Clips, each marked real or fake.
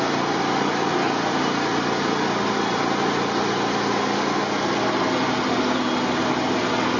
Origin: real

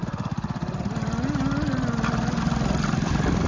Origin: real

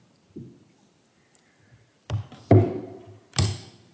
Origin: real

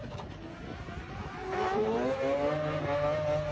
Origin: real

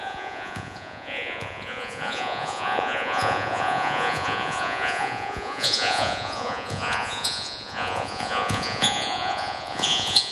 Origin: fake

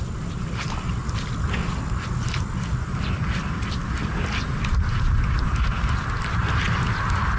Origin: real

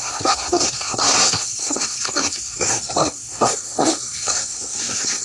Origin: fake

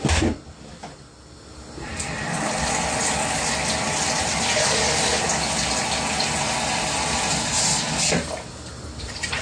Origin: real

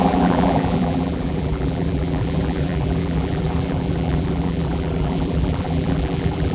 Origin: fake